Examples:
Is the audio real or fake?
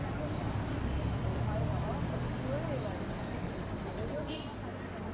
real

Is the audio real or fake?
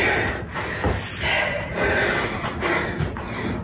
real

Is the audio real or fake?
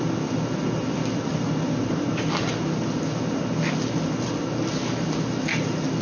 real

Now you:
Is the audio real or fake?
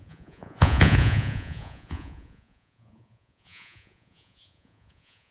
fake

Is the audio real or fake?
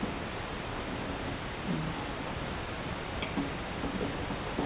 real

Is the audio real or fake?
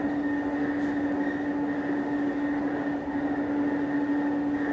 real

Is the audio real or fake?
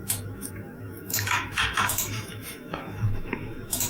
fake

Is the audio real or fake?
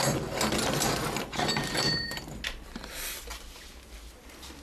real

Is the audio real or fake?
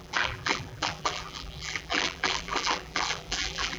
fake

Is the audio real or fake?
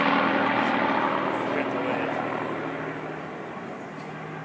real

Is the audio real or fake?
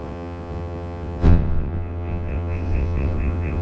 fake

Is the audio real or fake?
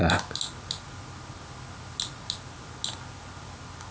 real